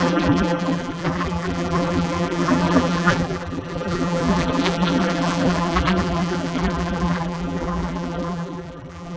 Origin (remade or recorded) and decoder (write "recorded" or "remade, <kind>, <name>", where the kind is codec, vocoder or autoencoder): remade, vocoder, BigVGAN v2